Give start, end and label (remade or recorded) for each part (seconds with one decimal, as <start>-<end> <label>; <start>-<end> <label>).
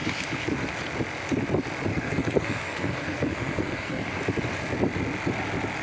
0.0-1.9 recorded; 1.9-4.2 remade; 4.2-5.8 recorded